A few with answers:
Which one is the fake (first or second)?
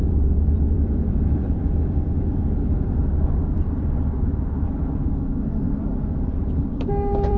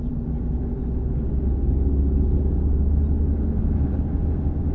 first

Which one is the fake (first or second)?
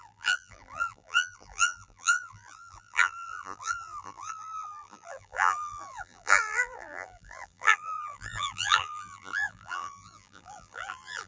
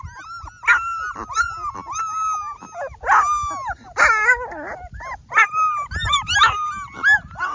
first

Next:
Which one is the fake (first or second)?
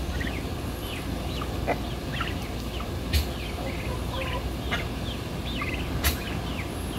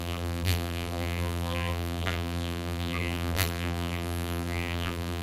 second